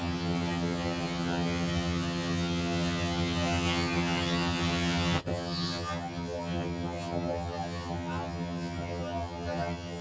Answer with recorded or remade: remade